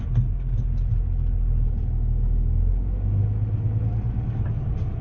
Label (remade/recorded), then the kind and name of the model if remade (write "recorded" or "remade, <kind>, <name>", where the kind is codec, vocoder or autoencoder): recorded